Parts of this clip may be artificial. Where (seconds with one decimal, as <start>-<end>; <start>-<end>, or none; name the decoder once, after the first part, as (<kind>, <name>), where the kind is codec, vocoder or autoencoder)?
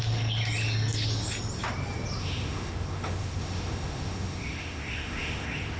2.2-5.8 (autoencoder, DAC-VAE)